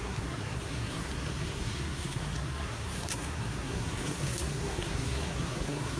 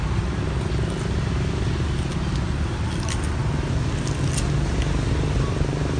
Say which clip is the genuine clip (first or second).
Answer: second